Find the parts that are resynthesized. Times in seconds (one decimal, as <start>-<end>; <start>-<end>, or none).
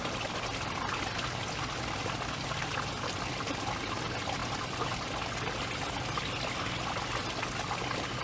none